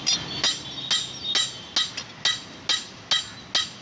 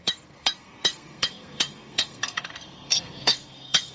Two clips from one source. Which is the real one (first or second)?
first